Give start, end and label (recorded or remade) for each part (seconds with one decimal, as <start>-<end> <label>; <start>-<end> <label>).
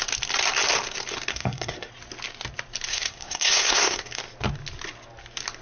0.0-1.3 recorded; 1.3-1.9 remade; 1.9-2.9 recorded; 2.9-4.2 remade; 4.2-5.6 recorded